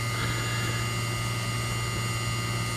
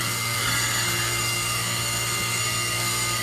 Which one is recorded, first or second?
first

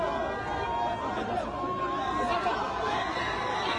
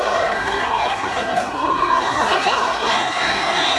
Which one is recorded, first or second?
first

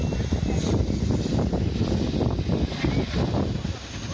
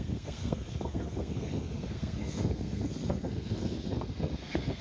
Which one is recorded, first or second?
first